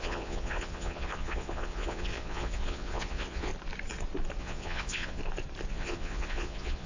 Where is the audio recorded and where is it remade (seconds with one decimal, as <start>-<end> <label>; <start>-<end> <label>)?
0.0-3.5 remade; 3.5-4.4 recorded; 4.4-5.2 remade; 5.2-5.7 recorded; 5.7-6.9 remade